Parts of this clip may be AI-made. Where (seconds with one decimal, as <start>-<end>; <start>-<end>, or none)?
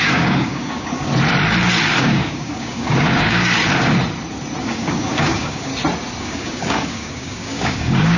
0.0-1.1; 2.0-3.6; 4.6-5.7; 6.2-8.2